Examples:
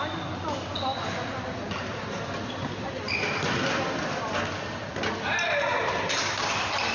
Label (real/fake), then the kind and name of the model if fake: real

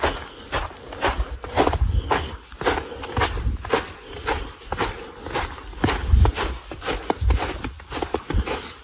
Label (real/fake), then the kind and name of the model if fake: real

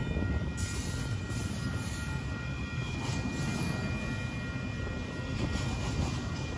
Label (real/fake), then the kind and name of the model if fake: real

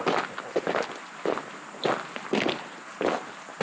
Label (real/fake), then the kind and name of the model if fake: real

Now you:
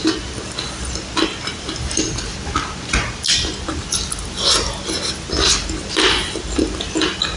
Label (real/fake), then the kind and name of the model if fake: real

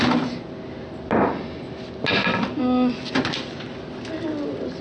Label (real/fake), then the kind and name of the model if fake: real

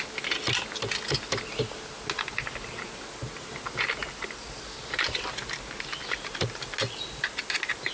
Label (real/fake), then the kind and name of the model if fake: real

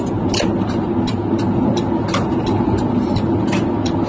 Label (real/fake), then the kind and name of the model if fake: real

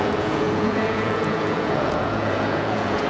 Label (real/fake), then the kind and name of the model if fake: fake, vocoder, Vocos